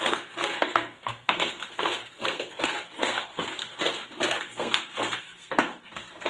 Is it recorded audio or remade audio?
remade